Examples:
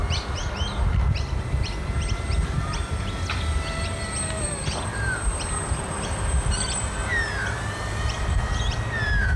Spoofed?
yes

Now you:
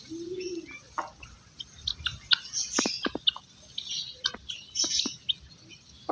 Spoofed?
no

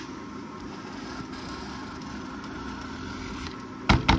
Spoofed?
no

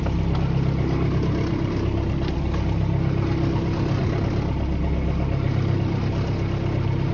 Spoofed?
no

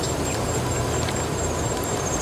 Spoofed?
no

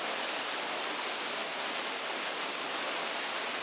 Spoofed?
no